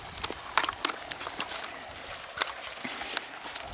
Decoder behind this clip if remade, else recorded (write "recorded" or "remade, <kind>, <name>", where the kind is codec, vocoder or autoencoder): recorded